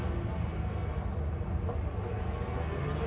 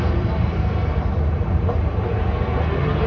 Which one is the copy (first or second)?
second